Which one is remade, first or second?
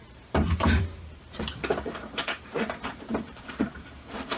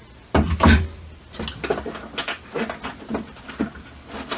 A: first